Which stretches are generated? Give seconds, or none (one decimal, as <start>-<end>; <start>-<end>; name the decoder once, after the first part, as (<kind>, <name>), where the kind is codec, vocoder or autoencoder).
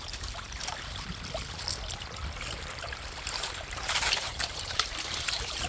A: 0.0-1.1 (vocoder, BigVGAN v2); 2.5-5.7